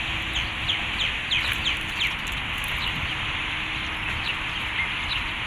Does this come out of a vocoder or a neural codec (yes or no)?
no